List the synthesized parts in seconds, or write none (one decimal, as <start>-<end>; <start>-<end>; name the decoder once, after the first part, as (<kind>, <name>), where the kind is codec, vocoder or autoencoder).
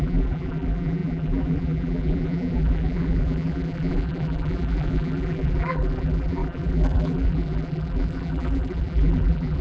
0.0-9.6 (vocoder, BigVGAN v2)